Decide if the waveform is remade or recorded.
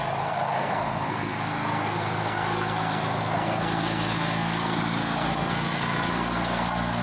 remade